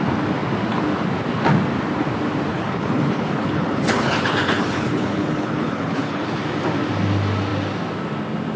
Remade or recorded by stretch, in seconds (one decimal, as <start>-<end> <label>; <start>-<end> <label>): 0.0-2.5 recorded; 2.5-6.4 remade; 6.4-8.6 recorded